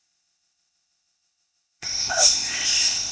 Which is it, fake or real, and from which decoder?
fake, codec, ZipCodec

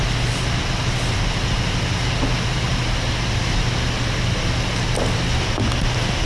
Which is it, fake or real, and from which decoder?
real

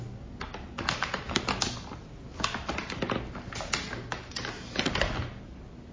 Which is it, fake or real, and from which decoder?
real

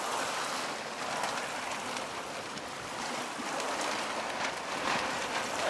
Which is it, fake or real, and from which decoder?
fake, vocoder, BigVGAN v2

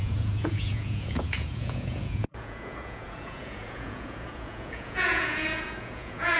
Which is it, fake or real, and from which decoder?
fake, vocoder, Vocos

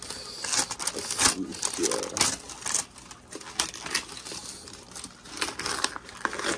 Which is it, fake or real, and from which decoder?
real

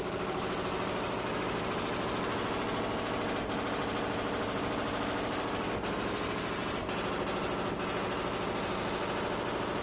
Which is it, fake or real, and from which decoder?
real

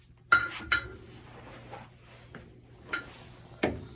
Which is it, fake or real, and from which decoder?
real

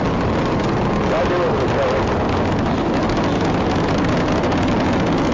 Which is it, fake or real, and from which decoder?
real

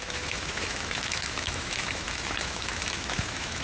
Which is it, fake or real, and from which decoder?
fake, autoencoder, DAC-VAE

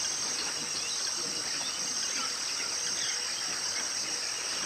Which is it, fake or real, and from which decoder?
real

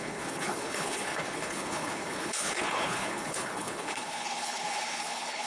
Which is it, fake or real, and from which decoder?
fake, codec, HILCodec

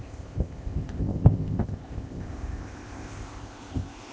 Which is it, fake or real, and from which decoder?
fake, codec, ZipCodec